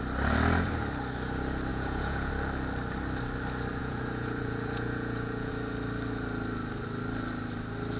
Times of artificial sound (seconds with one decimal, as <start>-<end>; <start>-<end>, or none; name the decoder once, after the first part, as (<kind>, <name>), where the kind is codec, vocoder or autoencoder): 1.7-2.3 (vocoder, Vocos); 3.8-5.5